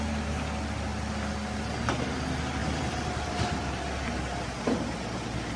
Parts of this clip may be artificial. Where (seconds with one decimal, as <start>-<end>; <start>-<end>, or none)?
2.6-3.4